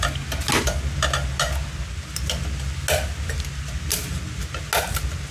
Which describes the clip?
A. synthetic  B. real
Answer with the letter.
B